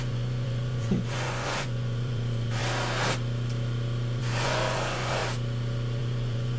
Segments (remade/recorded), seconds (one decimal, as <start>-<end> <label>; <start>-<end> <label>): 0.0-2.6 remade; 2.6-4.2 recorded; 4.2-5.2 remade; 5.2-6.0 recorded; 6.0-6.6 remade